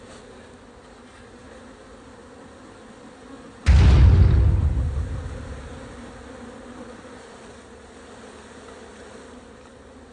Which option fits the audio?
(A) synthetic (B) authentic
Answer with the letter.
B